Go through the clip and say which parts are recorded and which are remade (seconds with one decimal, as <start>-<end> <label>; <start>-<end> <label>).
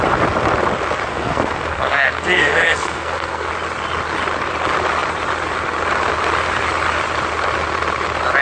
0.0-1.1 recorded; 1.1-3.5 remade; 3.5-8.4 recorded